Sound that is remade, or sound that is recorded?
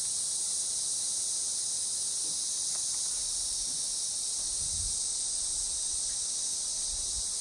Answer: recorded